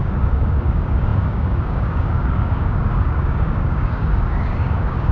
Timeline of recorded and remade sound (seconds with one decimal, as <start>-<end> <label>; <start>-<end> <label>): 0.0-5.1 remade